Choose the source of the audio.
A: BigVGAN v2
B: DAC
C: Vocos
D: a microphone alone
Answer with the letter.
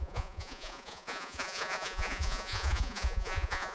C